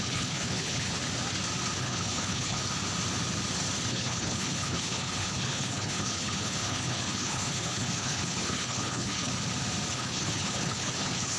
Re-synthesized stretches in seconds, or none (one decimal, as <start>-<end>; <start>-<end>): 0.0-1.0; 1.8-2.6; 3.9-9.3; 9.9-11.4